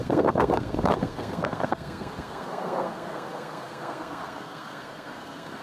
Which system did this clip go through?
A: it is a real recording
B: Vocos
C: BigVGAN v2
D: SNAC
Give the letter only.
D